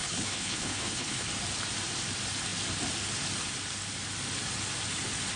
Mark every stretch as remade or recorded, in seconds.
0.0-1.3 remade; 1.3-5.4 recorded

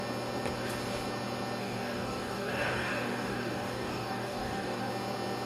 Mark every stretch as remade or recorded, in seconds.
0.0-1.6 recorded; 1.6-4.9 remade; 4.9-5.5 recorded

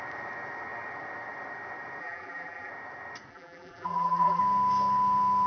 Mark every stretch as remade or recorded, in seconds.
0.0-2.0 recorded; 2.0-2.7 remade; 2.7-3.3 recorded; 3.3-4.4 remade; 4.4-5.5 recorded

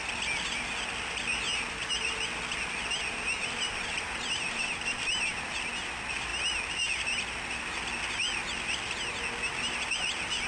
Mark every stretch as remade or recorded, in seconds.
0.0-3.4 recorded; 3.4-5.5 remade; 5.5-10.5 recorded

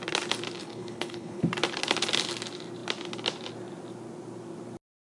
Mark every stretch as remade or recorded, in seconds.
0.0-0.6 recorded; 0.6-1.4 remade; 1.4-5.1 recorded

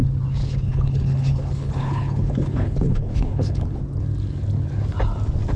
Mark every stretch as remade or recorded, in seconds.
0.0-0.4 recorded; 0.4-3.8 remade; 3.8-5.6 recorded